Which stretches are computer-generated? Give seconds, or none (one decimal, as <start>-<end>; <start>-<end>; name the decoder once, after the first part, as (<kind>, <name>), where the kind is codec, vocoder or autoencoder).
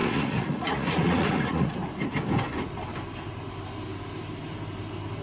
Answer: 0.0-1.7 (vocoder, Vocos)